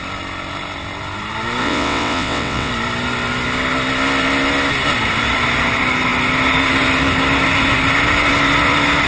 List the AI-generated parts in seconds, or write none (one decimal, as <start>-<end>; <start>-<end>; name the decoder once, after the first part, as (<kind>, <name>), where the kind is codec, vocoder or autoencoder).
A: 1.6-2.7 (vocoder, WaveNeXt)